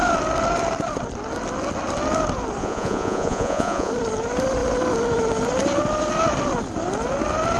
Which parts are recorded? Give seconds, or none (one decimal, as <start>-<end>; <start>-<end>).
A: 0.0-2.6; 3.9-7.6